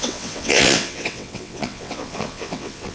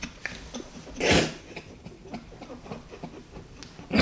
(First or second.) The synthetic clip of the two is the first